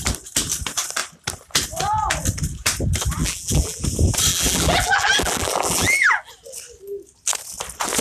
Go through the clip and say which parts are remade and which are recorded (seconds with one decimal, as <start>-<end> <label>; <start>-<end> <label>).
0.0-3.2 recorded; 3.2-3.8 remade; 3.8-4.3 recorded; 4.3-6.3 remade; 6.3-8.0 recorded